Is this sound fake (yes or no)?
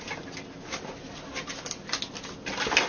no